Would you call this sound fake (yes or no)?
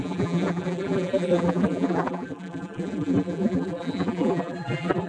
yes